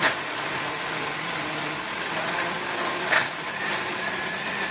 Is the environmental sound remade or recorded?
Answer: recorded